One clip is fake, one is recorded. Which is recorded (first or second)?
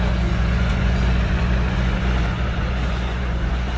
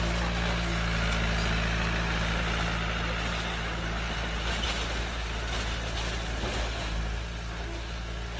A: second